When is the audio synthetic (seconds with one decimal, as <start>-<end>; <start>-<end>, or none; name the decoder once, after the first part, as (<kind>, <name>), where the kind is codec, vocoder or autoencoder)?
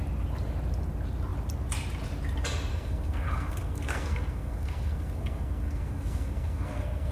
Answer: 2.7-7.1 (codec, SNAC)